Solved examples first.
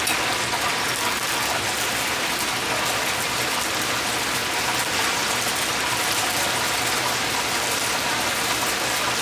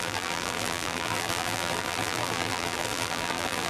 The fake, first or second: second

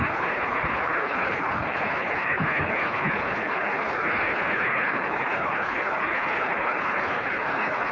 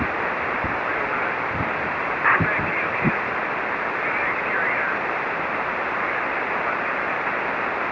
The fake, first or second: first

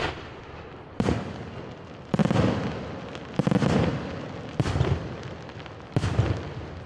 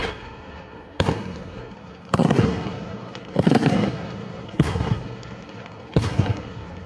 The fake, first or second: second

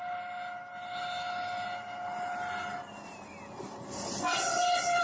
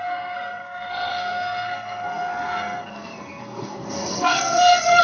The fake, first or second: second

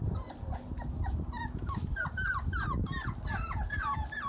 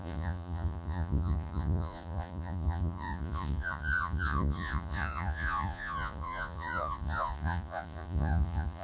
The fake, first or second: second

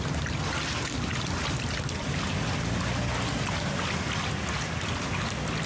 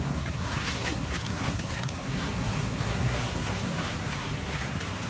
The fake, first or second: second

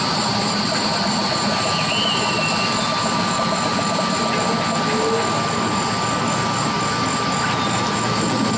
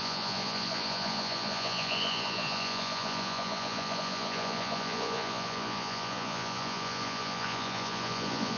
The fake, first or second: second